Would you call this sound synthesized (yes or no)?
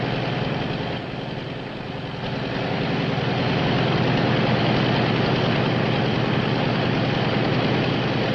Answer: no